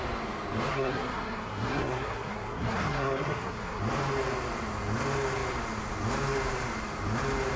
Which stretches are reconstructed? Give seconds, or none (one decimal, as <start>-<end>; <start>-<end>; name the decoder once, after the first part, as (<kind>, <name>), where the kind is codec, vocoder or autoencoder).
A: 0.7-3.8 (codec, SNAC)